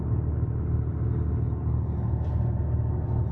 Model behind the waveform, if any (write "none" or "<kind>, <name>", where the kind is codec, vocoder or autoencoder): none